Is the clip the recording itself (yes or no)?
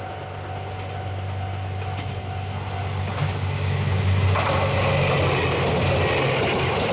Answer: yes